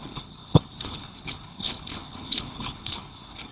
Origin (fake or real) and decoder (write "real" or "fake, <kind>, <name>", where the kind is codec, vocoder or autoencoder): fake, codec, HILCodec